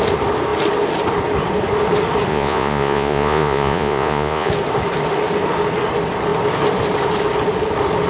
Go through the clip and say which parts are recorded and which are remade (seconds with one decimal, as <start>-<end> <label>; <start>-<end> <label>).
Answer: 0.0-2.3 recorded; 2.3-4.5 remade; 4.5-8.1 recorded